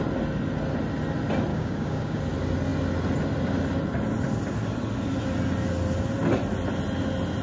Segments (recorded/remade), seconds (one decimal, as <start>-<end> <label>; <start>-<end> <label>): 0.0-1.5 recorded; 1.5-2.2 remade; 2.2-7.4 recorded